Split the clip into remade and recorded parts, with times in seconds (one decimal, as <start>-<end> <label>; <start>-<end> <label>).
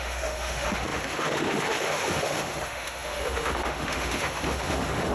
0.0-5.1 remade